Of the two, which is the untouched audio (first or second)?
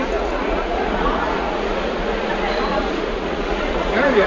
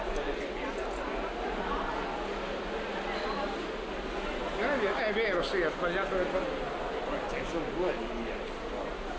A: second